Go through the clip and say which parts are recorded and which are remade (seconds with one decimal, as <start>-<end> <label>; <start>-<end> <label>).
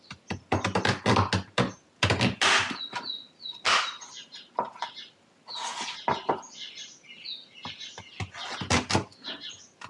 0.0-9.9 recorded